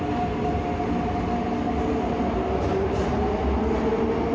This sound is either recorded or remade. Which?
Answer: recorded